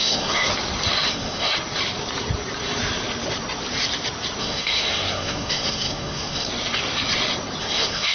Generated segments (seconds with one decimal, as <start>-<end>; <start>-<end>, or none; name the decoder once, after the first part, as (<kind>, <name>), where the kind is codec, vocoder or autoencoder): 0.0-0.5 (codec, SNAC); 1.1-1.5; 4.4-6.5; 7.6-8.1